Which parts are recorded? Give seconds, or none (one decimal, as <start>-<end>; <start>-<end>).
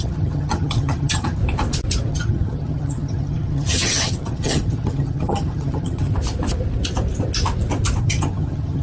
1.4-2.1; 6.1-8.0